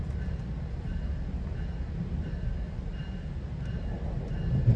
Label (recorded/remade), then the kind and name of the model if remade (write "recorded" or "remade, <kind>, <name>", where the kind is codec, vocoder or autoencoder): recorded